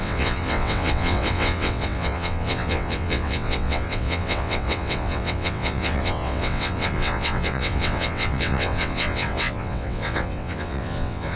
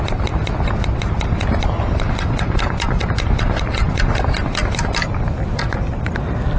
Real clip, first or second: second